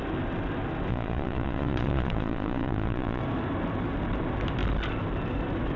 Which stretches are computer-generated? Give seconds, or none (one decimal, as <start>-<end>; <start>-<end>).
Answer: 0.9-3.2